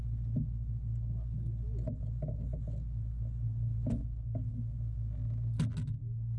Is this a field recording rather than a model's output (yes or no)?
yes